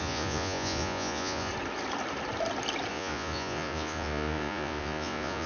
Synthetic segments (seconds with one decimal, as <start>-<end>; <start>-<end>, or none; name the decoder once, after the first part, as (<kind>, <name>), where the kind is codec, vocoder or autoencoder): 0.0-1.5 (vocoder, Vocos); 2.9-5.5